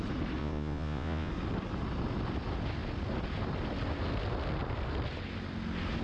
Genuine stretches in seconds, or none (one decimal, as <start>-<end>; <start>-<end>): 0.0-0.4; 1.3-6.0